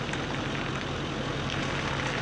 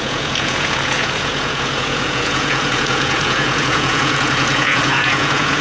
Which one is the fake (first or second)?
second